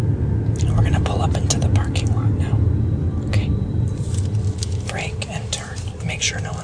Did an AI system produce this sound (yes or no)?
no